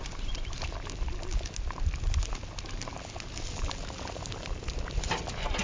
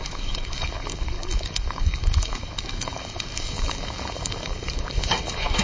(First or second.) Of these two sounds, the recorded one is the first